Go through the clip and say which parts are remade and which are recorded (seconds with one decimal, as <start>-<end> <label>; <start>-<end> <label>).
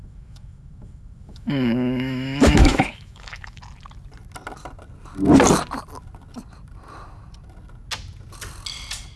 0.0-3.6 remade; 3.6-9.2 recorded